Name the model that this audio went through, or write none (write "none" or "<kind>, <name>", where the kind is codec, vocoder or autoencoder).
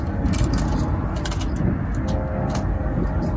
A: none